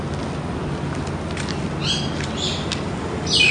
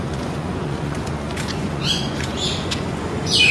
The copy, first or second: second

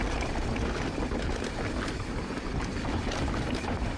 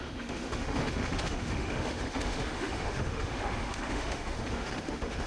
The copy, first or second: second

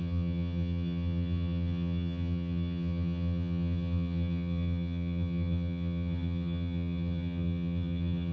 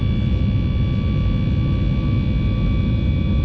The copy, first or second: first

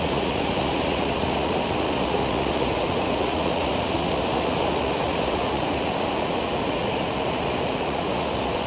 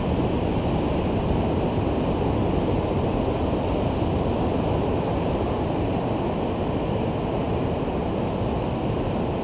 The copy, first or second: first